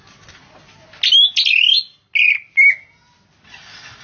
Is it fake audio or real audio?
real